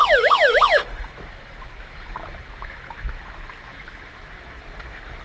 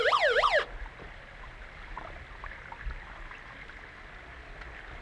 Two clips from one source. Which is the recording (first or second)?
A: second